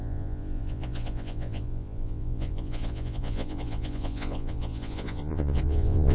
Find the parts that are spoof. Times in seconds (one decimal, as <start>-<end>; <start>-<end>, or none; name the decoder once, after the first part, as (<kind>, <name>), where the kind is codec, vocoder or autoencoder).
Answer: 0.0-6.1 (vocoder, Vocos)